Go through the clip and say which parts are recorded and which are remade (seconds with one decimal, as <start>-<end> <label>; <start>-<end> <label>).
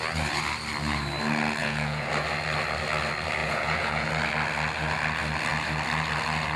0.0-1.6 recorded; 1.6-2.1 remade; 2.1-3.4 recorded; 3.4-4.1 remade; 4.1-6.6 recorded